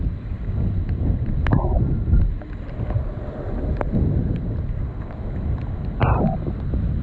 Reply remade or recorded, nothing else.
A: recorded